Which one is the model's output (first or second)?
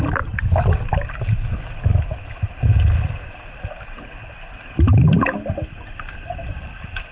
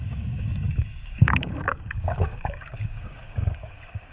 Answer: second